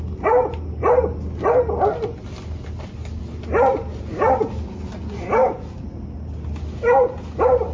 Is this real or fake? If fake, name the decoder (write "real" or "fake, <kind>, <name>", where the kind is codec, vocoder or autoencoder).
real